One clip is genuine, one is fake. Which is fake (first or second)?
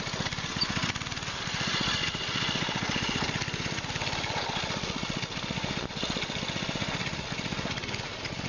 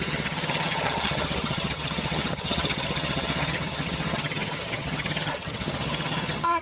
second